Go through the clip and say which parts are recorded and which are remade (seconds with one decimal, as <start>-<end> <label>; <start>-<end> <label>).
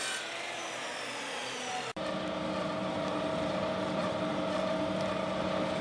0.0-5.8 recorded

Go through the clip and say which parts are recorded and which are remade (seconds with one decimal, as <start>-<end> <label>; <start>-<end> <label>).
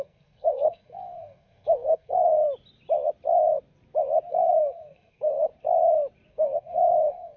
0.0-2.4 remade; 2.4-4.3 recorded; 4.3-5.5 remade; 5.5-6.3 recorded; 6.3-7.4 remade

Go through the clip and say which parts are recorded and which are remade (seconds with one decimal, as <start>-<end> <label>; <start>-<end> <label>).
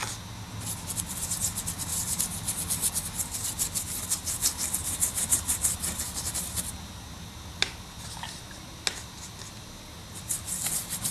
0.0-1.9 recorded; 1.9-2.9 remade; 2.9-4.8 recorded; 4.8-6.7 remade; 6.7-11.1 recorded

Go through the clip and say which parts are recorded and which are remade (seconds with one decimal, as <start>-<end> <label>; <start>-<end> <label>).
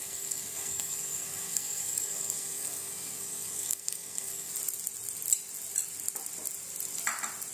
0.0-4.5 remade; 4.5-7.5 recorded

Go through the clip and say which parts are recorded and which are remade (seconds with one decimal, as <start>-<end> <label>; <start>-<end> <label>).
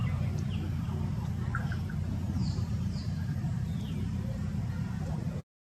0.0-1.3 remade; 1.3-2.4 recorded; 2.4-4.4 remade; 4.4-5.6 recorded